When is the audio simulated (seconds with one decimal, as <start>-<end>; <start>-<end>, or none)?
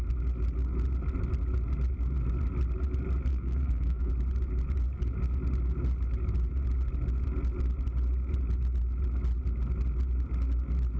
3.3-4.1